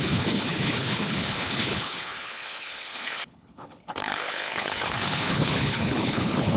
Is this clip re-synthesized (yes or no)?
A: yes